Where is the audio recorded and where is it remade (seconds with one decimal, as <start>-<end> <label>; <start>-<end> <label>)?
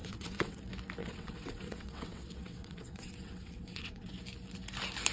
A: 0.0-0.6 remade; 0.6-1.0 recorded; 1.0-4.1 remade; 4.1-5.1 recorded